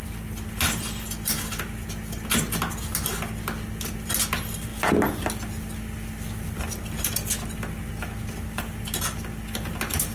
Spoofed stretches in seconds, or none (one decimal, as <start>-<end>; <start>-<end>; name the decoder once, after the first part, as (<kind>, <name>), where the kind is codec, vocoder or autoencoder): none

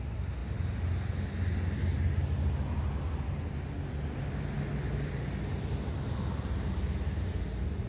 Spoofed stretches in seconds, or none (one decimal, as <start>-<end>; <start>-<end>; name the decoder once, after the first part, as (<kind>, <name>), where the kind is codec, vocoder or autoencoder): none